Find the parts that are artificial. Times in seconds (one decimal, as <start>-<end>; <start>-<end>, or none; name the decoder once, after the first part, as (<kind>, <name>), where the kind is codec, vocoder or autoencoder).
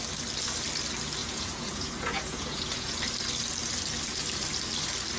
1.2-2.9 (vocoder, Vocos)